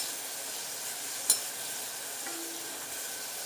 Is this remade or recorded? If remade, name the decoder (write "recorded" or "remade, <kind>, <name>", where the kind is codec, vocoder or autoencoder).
recorded